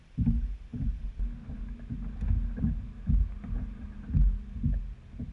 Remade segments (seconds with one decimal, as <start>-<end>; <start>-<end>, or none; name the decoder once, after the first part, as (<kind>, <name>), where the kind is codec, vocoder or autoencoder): none